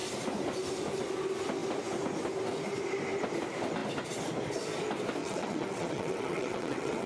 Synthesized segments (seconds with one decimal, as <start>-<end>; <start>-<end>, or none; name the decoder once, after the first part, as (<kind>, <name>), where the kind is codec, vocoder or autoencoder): 5.2-7.1 (vocoder, WaveNeXt)